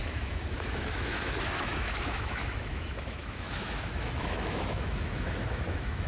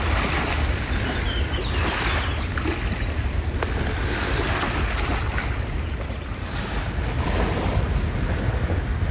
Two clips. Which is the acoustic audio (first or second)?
second